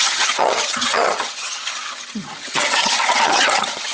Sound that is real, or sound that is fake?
fake